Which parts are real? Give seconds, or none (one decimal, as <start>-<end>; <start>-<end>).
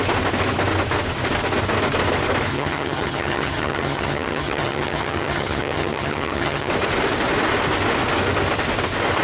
0.0-2.5; 6.7-9.2